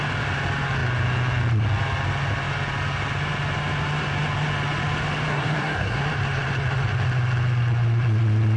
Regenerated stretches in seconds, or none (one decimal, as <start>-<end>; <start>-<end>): 5.3-6.0